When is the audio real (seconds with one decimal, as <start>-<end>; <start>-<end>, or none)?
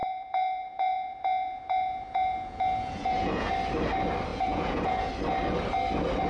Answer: 3.5-4.3; 5.1-6.3